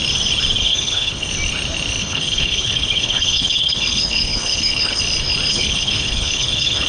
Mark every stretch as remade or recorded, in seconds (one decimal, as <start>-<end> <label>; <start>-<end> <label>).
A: 0.0-0.6 recorded; 0.6-1.3 remade; 1.3-2.0 recorded; 2.0-5.0 remade; 5.0-5.5 recorded; 5.5-6.9 remade